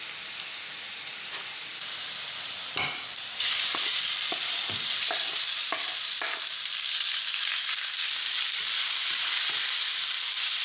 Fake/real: fake